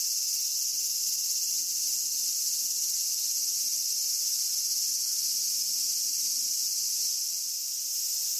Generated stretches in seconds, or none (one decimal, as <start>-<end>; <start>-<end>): none